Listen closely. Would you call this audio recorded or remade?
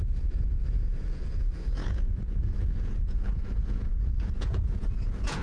remade